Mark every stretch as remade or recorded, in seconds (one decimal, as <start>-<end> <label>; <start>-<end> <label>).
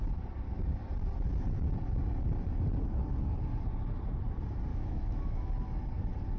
0.0-4.7 recorded; 4.7-5.5 remade; 5.5-6.4 recorded